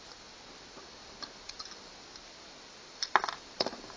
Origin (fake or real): real